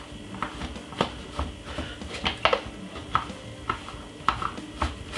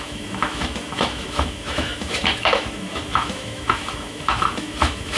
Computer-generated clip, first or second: second